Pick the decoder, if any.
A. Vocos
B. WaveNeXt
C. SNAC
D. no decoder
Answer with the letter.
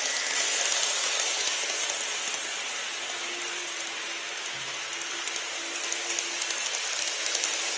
D